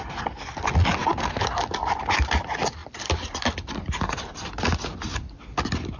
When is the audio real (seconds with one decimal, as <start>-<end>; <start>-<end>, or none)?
0.0-2.8; 5.6-6.0